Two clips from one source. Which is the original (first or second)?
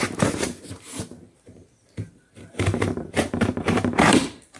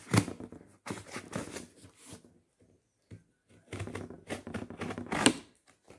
second